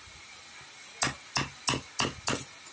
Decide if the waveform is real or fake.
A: real